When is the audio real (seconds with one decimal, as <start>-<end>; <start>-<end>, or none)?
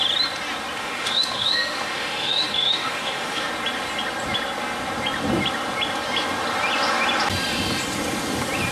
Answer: 0.0-0.8; 3.5-8.7